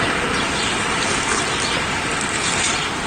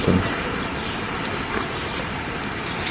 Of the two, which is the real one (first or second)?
first